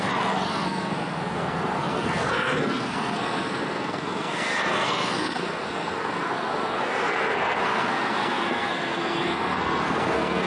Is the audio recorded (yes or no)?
no